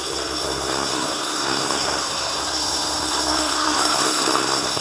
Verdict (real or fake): fake